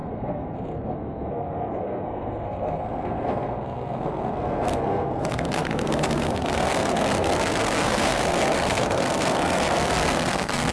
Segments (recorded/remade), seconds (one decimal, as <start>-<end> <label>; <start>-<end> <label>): 0.0-10.7 remade